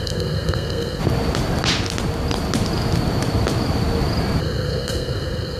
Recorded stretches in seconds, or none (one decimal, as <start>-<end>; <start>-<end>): 1.0-4.4